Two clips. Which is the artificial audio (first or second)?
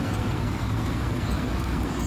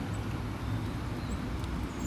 first